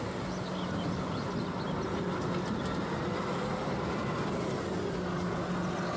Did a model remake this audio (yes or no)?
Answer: no